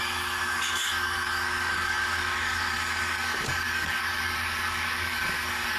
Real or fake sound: fake